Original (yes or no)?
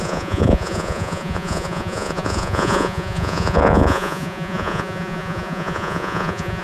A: no